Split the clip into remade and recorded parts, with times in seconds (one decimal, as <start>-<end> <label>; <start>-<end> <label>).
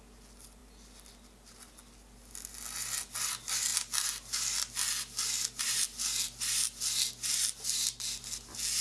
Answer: 0.0-8.8 recorded